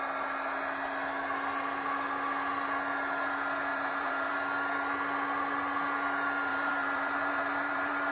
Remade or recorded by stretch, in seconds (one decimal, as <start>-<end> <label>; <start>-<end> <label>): 0.0-3.7 recorded; 3.7-4.3 remade; 4.3-6.5 recorded; 6.5-8.1 remade